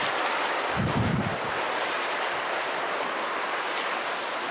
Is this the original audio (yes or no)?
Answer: yes